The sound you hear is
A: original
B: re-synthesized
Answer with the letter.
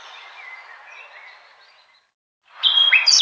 A